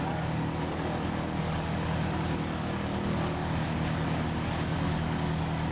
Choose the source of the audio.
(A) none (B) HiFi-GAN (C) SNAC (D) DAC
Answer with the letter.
D